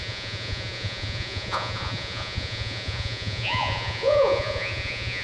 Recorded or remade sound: remade